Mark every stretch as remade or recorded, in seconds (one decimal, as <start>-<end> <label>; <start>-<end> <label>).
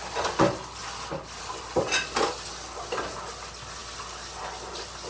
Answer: 0.0-5.1 recorded